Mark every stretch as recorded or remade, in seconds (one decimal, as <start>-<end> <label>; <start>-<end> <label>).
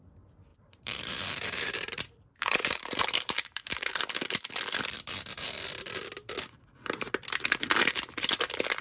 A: 0.0-0.5 recorded; 0.5-3.9 remade; 3.9-8.8 recorded